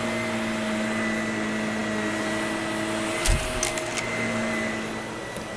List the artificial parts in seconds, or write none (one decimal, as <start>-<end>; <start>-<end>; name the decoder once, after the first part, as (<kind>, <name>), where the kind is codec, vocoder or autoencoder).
none